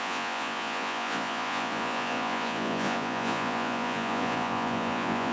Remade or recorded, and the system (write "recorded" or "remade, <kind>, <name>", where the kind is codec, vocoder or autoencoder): remade, vocoder, Vocos